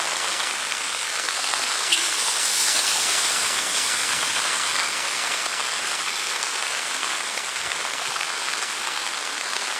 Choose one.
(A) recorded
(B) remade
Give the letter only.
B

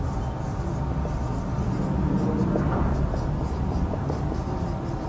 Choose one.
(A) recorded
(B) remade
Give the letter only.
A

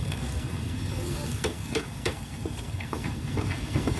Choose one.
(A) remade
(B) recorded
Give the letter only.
A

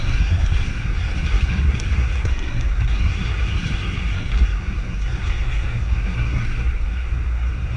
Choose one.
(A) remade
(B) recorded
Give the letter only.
A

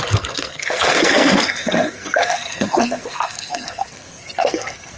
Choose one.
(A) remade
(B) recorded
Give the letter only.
A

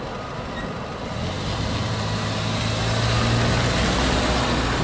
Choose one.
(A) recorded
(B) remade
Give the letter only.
A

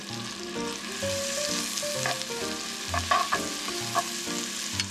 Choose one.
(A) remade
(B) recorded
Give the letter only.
B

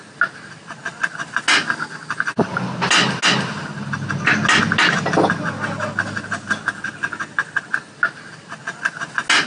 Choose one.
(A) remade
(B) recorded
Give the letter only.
B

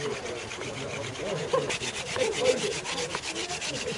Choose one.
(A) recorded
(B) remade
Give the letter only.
A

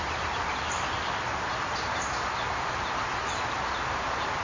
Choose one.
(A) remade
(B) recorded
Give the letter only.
B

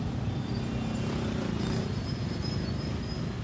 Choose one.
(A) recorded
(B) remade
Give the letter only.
A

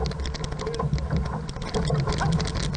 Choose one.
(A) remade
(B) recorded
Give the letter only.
B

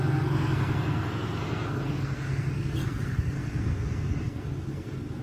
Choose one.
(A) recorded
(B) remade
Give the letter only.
B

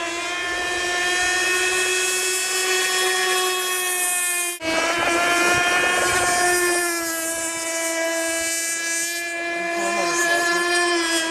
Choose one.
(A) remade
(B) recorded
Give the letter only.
B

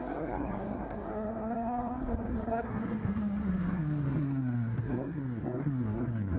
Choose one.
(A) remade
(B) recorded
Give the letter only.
A